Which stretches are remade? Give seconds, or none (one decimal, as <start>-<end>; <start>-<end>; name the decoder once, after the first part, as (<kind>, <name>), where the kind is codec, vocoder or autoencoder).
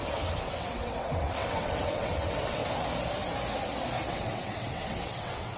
0.0-2.6 (vocoder, WaveNeXt); 4.1-5.6